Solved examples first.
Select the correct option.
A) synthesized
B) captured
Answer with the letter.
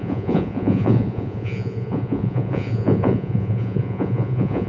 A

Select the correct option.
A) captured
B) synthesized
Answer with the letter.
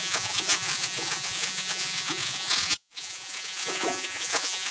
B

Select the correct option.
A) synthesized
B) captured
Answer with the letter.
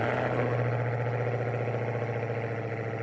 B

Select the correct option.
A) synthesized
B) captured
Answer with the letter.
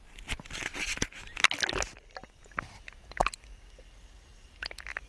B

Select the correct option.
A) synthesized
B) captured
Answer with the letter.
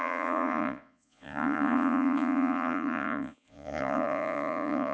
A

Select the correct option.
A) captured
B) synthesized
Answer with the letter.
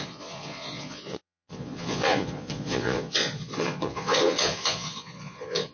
B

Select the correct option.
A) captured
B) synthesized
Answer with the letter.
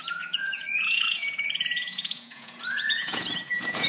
B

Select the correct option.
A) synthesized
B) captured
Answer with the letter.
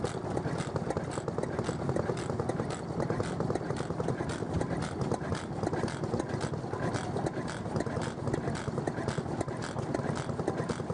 B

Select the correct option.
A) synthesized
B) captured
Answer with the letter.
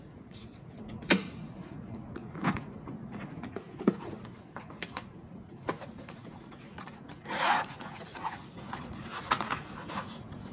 A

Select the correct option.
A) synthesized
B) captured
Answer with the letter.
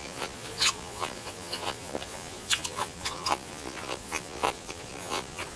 A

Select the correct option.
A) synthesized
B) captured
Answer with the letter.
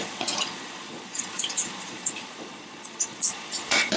A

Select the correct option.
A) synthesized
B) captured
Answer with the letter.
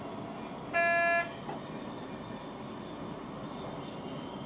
B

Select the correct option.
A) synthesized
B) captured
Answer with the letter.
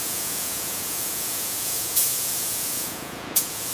A